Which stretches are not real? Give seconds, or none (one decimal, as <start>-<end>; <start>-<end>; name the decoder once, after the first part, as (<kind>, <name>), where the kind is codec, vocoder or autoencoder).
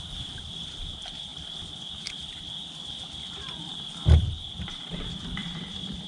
5.4-6.1 (vocoder, BigVGAN v2)